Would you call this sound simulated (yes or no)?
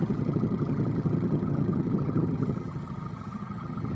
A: yes